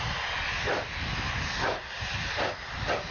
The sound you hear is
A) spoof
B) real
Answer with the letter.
B